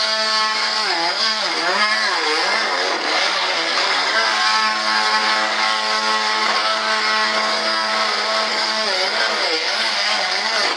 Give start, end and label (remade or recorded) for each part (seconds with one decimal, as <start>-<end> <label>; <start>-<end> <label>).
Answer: 0.0-7.9 remade; 7.9-8.5 recorded; 8.5-10.8 remade